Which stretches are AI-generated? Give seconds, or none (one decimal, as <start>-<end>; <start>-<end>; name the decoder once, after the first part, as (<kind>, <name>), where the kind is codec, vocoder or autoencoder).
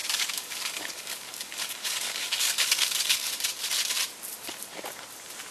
0.0-3.3 (codec, DAC)